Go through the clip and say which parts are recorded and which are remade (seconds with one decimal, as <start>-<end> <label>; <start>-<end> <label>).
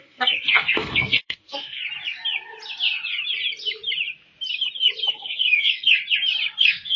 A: 0.0-1.8 remade; 1.8-5.1 recorded; 5.1-6.0 remade; 6.0-6.6 recorded; 6.6-7.0 remade